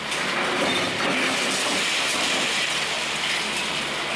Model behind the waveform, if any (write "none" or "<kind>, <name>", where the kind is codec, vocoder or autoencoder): none